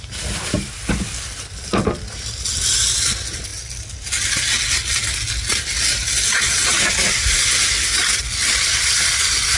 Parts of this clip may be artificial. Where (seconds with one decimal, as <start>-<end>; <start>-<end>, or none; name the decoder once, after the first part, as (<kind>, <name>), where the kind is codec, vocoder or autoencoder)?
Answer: none